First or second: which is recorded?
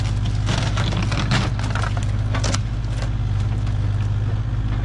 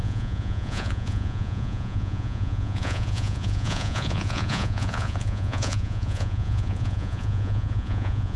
first